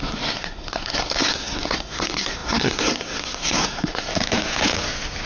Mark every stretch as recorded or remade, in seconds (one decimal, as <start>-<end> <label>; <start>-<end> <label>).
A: 0.0-4.1 remade; 4.1-5.3 recorded